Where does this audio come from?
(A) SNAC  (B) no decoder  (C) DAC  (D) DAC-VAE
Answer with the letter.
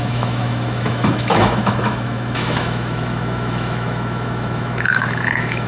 D